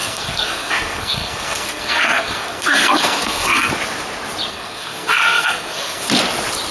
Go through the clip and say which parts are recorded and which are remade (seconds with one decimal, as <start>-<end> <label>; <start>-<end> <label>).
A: 0.0-3.7 remade; 3.7-4.5 recorded; 4.5-6.1 remade; 6.1-6.7 recorded

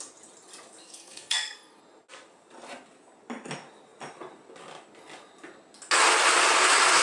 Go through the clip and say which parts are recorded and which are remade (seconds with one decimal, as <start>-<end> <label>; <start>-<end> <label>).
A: 0.0-0.8 recorded; 0.8-1.8 remade; 1.8-7.0 recorded

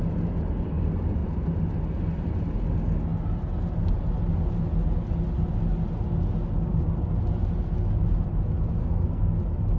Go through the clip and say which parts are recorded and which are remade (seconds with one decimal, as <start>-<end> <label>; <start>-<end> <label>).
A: 0.0-8.8 recorded; 8.8-9.4 remade; 9.4-9.8 recorded